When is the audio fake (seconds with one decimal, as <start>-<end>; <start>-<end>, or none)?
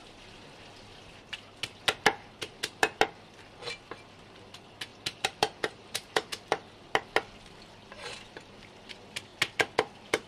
4.9-6.3; 7.8-8.8